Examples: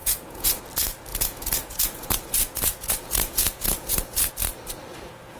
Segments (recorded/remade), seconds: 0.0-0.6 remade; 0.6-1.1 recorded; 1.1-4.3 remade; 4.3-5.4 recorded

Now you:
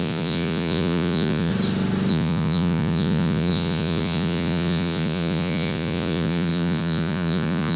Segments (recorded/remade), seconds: 0.0-1.5 remade; 1.5-2.1 recorded; 2.1-7.8 remade

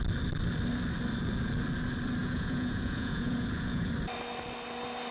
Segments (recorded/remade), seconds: 0.0-2.2 recorded; 2.2-3.9 remade; 3.9-5.1 recorded

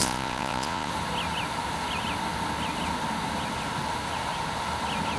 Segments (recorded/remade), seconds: 0.0-0.9 remade; 0.9-5.2 recorded

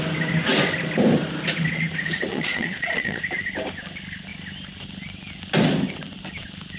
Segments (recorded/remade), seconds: 0.0-2.3 recorded; 2.3-3.2 remade; 3.2-6.8 recorded